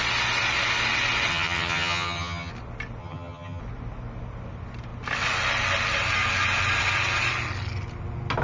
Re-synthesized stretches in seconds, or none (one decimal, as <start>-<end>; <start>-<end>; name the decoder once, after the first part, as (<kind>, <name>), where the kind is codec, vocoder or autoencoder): 1.3-2.5 (vocoder, HiFi-GAN); 3.0-3.6